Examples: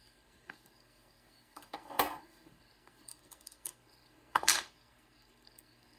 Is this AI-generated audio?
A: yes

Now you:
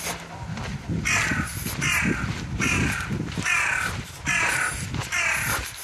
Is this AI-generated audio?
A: no